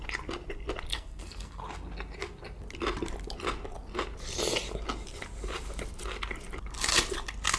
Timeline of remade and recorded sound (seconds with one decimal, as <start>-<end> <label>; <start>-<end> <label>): 0.0-0.9 recorded; 0.9-1.6 remade; 1.6-7.6 recorded